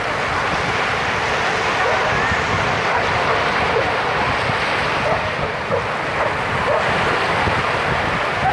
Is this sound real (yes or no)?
yes